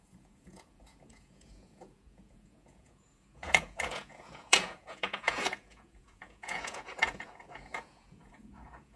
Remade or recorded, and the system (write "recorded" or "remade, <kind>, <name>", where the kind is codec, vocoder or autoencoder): remade, vocoder, Vocos